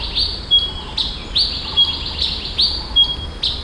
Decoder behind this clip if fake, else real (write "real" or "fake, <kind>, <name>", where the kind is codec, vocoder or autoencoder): real